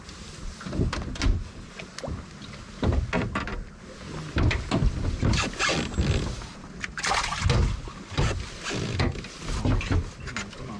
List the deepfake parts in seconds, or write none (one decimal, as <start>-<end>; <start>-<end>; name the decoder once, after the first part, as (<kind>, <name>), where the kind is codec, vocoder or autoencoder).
none